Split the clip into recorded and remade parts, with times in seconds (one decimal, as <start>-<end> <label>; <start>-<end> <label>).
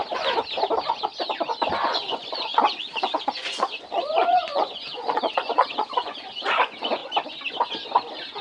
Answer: 0.0-1.9 recorded; 1.9-7.0 remade; 7.0-8.4 recorded